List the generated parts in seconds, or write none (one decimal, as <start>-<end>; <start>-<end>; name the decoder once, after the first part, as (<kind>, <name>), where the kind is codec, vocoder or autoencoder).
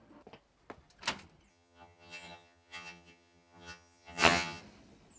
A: 1.5-4.6 (vocoder, HiFi-GAN)